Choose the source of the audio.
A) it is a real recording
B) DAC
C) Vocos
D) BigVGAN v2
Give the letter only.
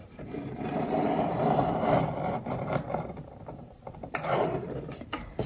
D